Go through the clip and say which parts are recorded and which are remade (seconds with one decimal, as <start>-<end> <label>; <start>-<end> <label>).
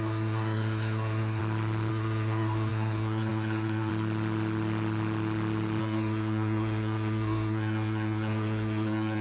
0.0-1.4 remade; 1.4-1.9 recorded; 1.9-3.9 remade; 3.9-5.8 recorded; 5.8-9.2 remade